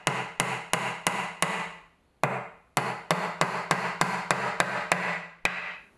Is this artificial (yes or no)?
no